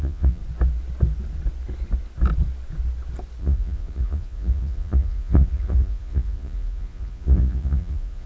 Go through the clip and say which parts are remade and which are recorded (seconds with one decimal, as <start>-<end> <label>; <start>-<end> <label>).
0.0-0.4 remade; 0.4-3.4 recorded; 3.4-8.3 remade